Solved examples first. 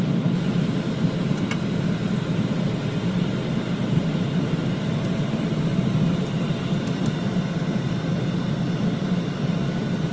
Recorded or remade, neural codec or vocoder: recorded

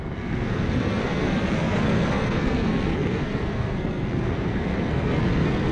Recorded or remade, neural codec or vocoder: remade, codec, SNAC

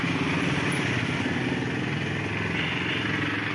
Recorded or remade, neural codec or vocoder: recorded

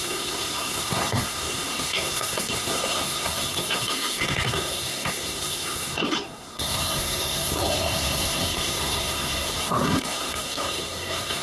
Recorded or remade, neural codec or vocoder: remade, codec, SNAC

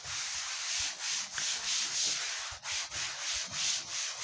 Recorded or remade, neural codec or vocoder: recorded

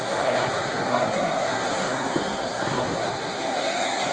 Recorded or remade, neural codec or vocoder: remade, codec, SNAC